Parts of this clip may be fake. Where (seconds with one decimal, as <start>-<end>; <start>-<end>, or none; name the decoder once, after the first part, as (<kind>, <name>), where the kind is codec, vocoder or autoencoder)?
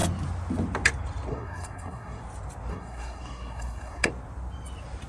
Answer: 1.3-2.2 (codec, SNAC); 2.7-4.1